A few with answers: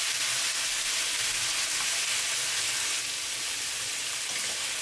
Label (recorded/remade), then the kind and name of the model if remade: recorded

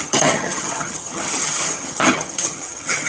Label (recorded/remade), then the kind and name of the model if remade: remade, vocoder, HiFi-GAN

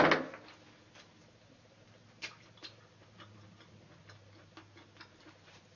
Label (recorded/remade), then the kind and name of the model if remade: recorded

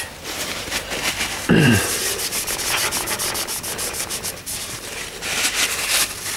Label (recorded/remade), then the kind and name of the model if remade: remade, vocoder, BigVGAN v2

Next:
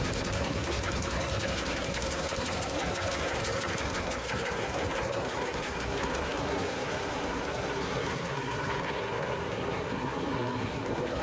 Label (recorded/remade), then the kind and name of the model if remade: remade, codec, SNAC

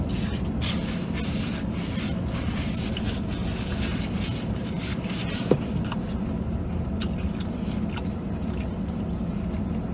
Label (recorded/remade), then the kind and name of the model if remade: recorded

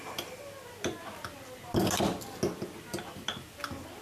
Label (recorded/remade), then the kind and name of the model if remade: recorded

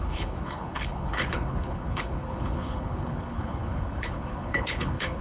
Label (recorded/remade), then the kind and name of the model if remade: remade, codec, HILCodec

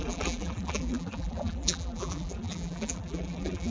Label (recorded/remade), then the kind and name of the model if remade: remade, vocoder, BigVGAN v2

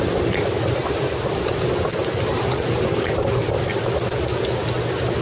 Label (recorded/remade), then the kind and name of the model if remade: recorded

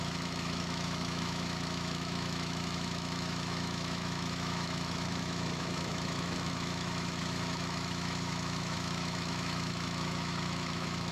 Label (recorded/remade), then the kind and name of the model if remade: remade, autoencoder, DAC-VAE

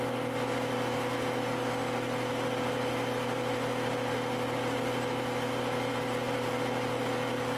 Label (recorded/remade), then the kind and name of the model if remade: recorded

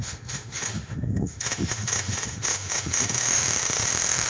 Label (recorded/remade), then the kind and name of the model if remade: remade, autoencoder, DAC-VAE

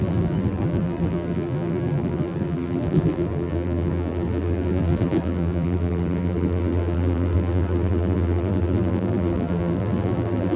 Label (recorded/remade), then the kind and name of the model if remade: remade, vocoder, BigVGAN v2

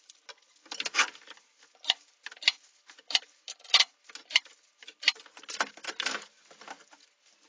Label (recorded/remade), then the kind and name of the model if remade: recorded